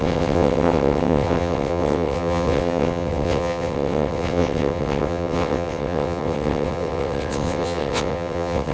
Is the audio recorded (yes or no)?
no